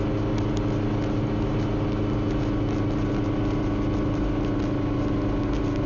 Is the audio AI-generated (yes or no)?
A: no